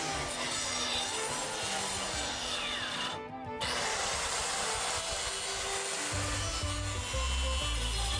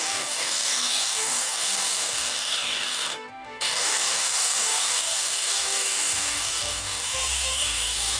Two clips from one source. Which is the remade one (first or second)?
second